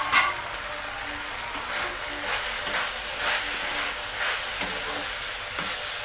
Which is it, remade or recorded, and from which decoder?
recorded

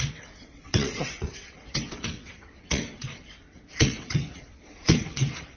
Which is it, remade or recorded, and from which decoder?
remade, vocoder, WaveNeXt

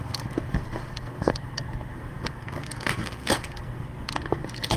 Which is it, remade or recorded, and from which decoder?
remade, codec, SNAC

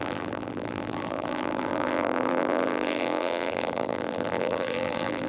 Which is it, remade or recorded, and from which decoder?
remade, vocoder, BigVGAN v2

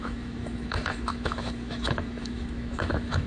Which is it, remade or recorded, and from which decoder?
remade, autoencoder, DAC-VAE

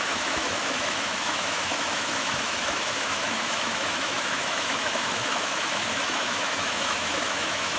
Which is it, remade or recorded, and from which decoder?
remade, autoencoder, DAC-VAE